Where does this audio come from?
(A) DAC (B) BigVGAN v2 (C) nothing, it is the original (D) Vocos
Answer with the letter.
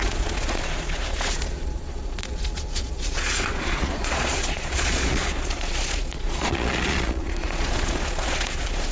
D